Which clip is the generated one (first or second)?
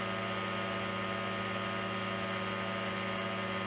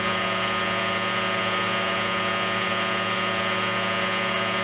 second